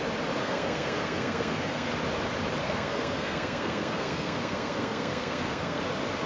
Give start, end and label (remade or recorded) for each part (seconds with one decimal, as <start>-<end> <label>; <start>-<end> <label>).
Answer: 0.0-0.4 recorded; 0.4-1.9 remade; 1.9-2.6 recorded; 2.6-5.8 remade; 5.8-6.3 recorded